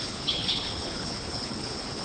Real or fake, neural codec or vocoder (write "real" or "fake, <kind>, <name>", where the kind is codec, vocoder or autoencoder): fake, codec, HILCodec